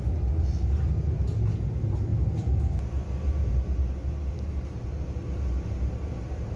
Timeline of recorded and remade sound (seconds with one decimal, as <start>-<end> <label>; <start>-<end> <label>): 0.0-6.6 recorded